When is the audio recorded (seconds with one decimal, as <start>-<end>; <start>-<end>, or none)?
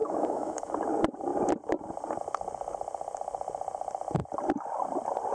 0.7-5.3